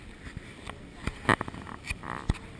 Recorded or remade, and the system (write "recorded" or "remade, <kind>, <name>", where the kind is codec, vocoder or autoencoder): recorded